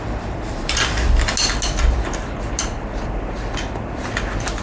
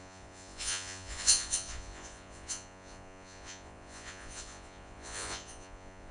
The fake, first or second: second